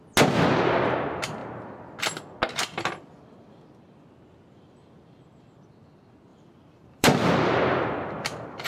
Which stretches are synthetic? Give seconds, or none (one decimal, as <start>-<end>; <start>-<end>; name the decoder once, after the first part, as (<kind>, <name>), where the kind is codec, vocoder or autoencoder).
6.3-8.7 (vocoder, BigVGAN v2)